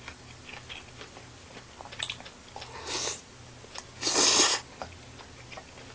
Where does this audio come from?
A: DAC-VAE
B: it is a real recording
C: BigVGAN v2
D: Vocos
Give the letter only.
B